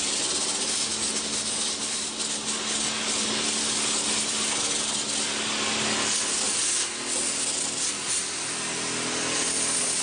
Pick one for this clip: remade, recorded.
recorded